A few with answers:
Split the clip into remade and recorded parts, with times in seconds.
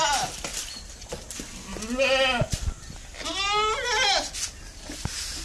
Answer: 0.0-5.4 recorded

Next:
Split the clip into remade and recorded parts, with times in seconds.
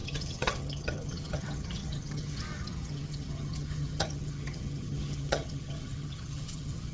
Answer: 0.0-6.9 remade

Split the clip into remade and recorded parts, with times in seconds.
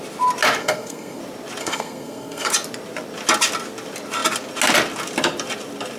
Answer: 0.0-0.6 recorded; 0.6-1.2 remade; 1.2-1.6 recorded; 1.6-2.5 remade; 2.5-6.0 recorded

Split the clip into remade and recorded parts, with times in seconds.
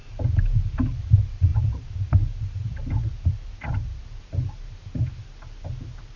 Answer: 0.0-6.2 recorded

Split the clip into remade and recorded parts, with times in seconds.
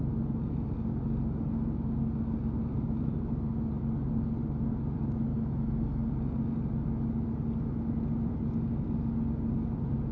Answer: 0.0-5.3 recorded; 5.3-6.1 remade; 6.1-10.1 recorded